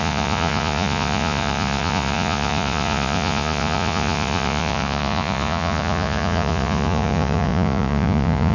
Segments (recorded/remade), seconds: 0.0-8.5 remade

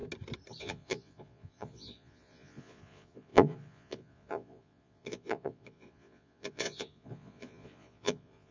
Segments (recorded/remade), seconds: 0.0-0.6 recorded; 0.6-8.5 remade

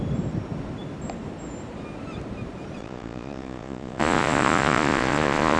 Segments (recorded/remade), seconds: 0.0-2.8 recorded; 2.8-5.6 remade

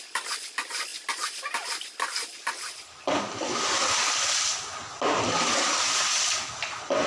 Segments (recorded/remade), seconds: 0.0-7.1 recorded

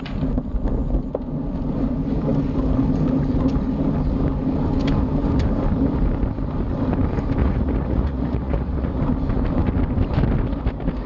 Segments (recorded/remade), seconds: 0.0-7.4 recorded; 7.4-9.0 remade; 9.0-11.1 recorded

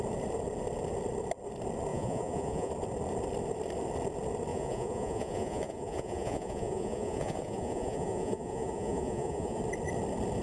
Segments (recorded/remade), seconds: 0.0-1.9 recorded; 1.9-2.7 remade; 2.7-4.5 recorded; 4.5-9.6 remade; 9.6-10.4 recorded